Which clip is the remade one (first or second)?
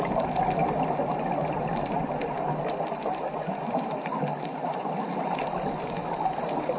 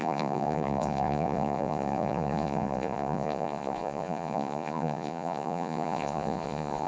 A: second